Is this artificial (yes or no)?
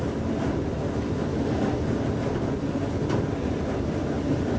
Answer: no